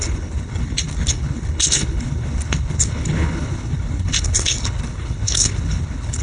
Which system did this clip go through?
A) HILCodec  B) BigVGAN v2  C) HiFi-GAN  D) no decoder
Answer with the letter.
A